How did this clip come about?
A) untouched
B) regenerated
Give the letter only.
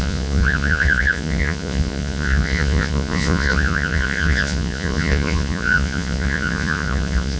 B